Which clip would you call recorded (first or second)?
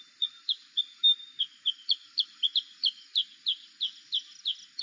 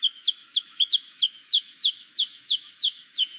first